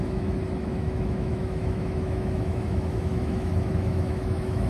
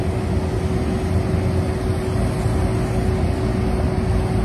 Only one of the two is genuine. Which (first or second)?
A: second